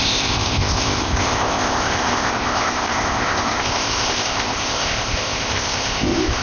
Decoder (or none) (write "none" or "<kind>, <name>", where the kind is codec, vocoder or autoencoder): codec, ZipCodec